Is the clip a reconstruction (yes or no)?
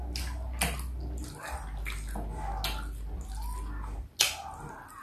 no